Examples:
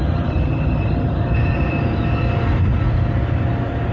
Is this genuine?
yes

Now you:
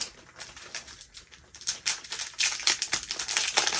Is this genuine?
yes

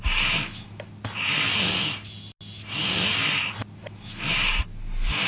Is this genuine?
yes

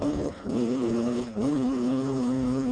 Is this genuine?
no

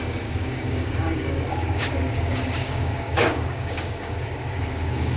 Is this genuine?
no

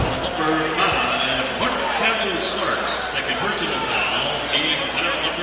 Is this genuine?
yes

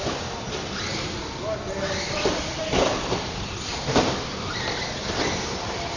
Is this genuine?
yes